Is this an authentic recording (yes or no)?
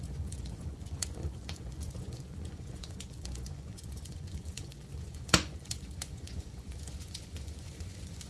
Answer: no